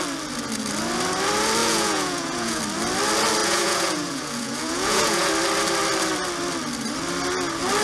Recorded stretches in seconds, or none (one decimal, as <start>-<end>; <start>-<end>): 0.0-1.6; 2.6-3.4; 5.3-7.8